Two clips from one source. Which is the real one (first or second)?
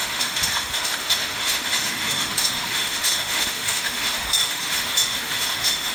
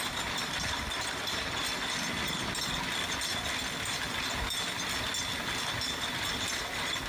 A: second